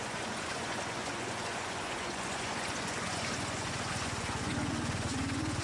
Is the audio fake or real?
fake